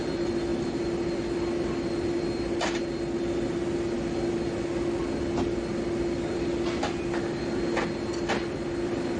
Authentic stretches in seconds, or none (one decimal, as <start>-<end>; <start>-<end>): 0.0-9.2